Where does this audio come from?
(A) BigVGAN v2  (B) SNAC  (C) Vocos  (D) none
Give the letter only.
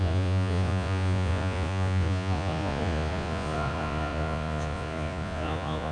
C